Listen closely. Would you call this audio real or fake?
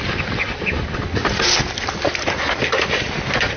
real